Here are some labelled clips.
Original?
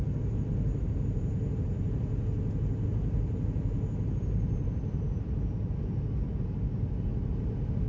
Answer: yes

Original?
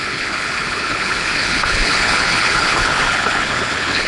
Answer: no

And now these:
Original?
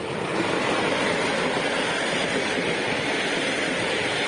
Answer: yes